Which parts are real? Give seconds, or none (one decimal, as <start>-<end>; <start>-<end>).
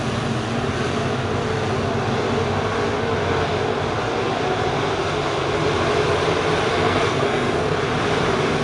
0.0-6.7; 7.8-8.6